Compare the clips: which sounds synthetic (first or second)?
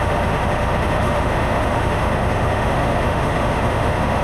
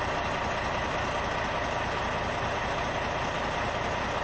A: first